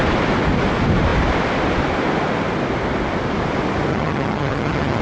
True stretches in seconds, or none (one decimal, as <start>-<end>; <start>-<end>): 0.0-3.9